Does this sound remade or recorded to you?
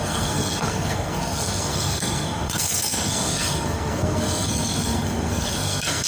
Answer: remade